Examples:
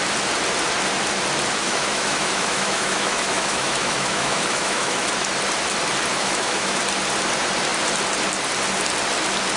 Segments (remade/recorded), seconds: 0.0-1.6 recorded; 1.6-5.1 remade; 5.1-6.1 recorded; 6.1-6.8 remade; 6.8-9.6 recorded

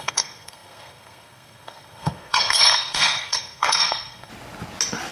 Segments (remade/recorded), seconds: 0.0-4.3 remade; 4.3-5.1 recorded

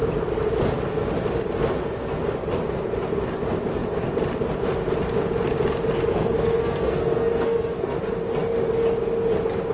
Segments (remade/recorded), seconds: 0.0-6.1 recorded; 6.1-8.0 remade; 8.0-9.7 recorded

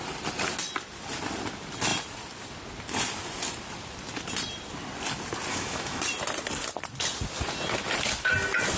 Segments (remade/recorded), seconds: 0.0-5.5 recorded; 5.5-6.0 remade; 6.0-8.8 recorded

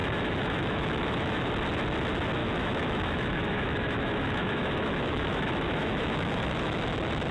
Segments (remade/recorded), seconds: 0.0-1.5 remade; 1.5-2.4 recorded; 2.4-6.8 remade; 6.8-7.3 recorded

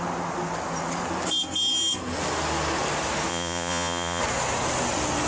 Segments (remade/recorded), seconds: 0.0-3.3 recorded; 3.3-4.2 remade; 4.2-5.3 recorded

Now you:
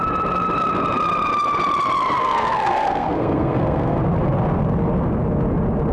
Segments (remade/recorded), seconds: 0.0-2.2 recorded; 2.2-4.0 remade; 4.0-5.9 recorded

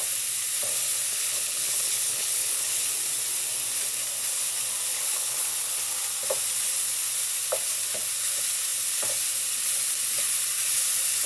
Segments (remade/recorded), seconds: 0.0-1.1 recorded; 1.1-2.8 remade; 2.8-4.9 recorded; 4.9-5.8 remade; 5.8-11.3 recorded